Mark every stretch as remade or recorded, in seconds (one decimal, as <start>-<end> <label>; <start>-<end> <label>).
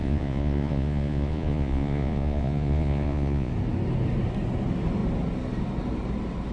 0.0-3.5 remade; 3.5-6.5 recorded